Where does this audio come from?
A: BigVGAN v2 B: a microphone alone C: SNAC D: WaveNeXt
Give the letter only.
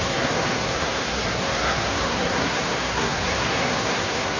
C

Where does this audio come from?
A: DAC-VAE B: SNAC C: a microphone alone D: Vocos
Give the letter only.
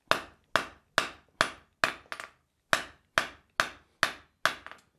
C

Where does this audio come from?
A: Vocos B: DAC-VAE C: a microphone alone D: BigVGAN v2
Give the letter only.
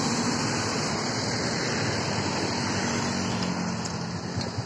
C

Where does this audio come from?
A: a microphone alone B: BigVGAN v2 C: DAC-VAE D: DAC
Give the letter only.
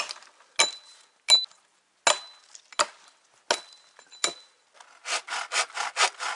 A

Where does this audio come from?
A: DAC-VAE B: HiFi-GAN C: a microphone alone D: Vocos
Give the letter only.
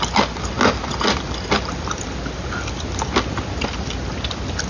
C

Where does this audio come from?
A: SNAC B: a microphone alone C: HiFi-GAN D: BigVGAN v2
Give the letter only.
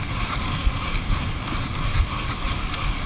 B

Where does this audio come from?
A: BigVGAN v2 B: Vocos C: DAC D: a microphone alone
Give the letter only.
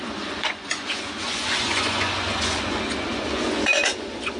B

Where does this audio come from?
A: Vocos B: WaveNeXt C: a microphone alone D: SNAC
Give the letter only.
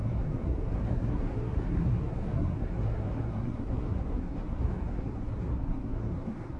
D